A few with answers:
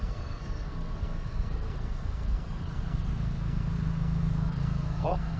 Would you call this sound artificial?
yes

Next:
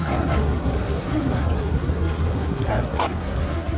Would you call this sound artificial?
yes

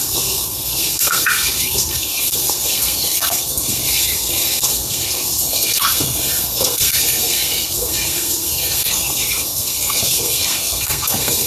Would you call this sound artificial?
yes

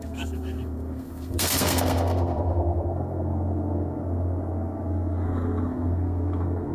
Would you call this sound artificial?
yes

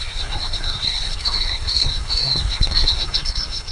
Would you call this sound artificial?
yes